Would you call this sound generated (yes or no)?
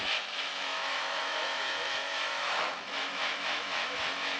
yes